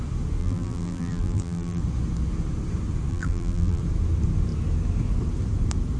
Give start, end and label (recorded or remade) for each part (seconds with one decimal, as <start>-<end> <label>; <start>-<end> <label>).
0.0-0.4 recorded; 0.4-1.8 remade; 1.8-3.1 recorded; 3.1-3.8 remade; 3.8-6.0 recorded